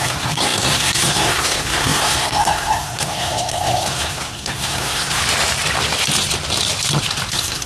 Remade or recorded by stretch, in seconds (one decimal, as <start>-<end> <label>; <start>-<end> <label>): 0.0-5.2 remade; 5.2-7.3 recorded; 7.3-7.7 remade

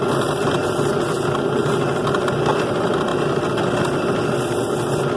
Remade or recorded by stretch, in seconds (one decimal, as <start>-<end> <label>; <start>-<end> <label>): 0.0-5.2 recorded

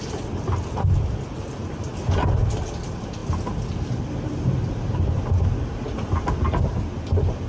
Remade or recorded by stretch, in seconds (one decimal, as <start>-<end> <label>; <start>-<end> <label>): 0.0-7.5 recorded